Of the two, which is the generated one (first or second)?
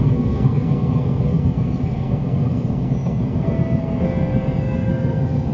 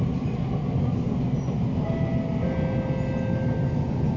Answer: first